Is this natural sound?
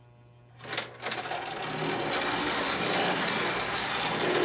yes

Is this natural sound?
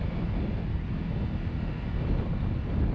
yes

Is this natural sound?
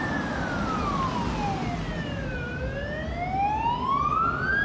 yes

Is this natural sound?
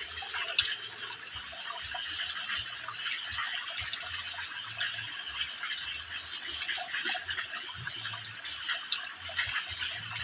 yes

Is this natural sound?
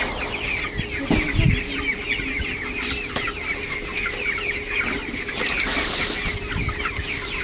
yes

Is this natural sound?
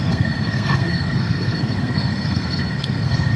no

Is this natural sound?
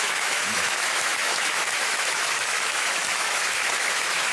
no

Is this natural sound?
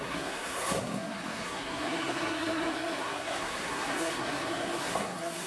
no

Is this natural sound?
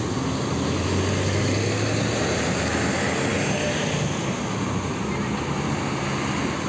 yes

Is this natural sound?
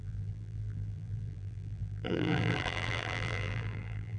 no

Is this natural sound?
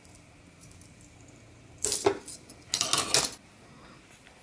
yes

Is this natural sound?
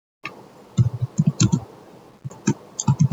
yes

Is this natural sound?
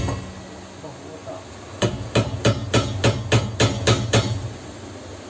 yes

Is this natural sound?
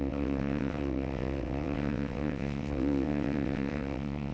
no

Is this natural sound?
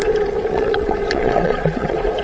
no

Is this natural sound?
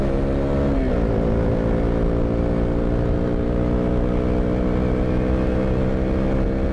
yes